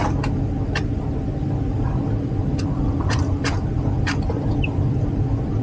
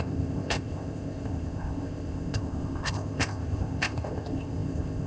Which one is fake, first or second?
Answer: second